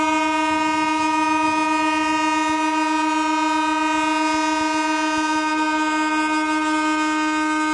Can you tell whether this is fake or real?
real